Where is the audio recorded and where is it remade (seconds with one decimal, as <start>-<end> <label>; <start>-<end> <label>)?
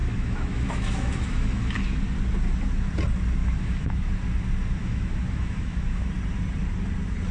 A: 0.0-1.7 remade; 1.7-3.4 recorded; 3.4-4.1 remade; 4.1-4.8 recorded; 4.8-6.1 remade; 6.1-7.3 recorded